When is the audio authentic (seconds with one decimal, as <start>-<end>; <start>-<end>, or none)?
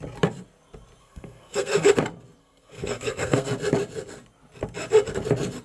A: 0.0-1.0; 1.9-2.4; 3.5-5.6